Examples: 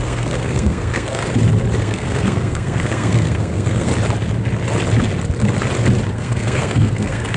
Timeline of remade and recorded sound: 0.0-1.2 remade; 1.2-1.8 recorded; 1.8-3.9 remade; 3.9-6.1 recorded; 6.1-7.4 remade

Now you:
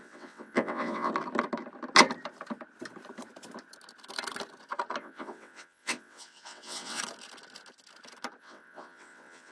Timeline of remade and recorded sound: 0.0-1.1 remade; 1.1-5.0 recorded; 5.0-7.0 remade; 7.0-8.4 recorded; 8.4-9.5 remade

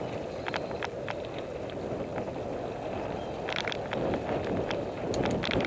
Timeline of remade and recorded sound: 0.0-5.7 recorded

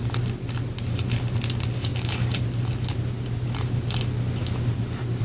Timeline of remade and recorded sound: 0.0-5.2 recorded

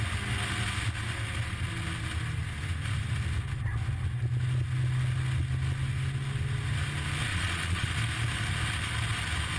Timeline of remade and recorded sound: 0.0-7.3 recorded; 7.3-7.9 remade; 7.9-9.6 recorded

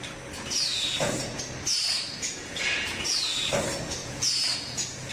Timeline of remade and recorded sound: 0.0-0.7 recorded; 0.7-1.4 remade; 1.4-1.8 recorded; 1.8-3.5 remade; 3.5-4.0 recorded; 4.0-5.1 remade